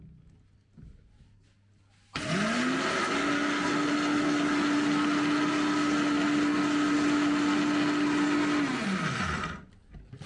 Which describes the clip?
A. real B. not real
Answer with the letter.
A